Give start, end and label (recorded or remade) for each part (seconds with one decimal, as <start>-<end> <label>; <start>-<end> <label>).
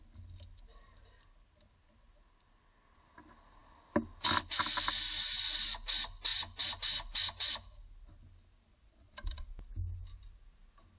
0.0-8.7 recorded; 8.7-9.5 remade; 9.5-11.0 recorded